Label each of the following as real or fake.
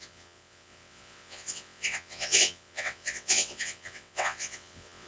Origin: fake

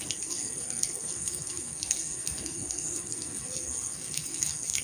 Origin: fake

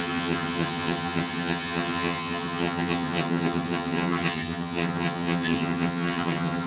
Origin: fake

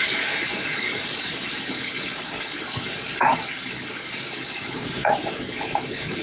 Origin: fake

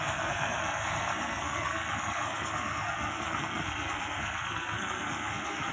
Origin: fake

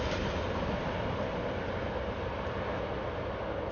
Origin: real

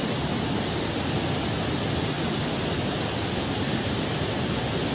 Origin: real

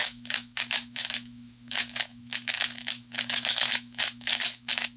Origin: fake